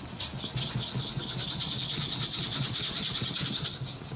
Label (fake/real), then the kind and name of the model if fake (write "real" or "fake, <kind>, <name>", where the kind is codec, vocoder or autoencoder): fake, vocoder, BigVGAN v2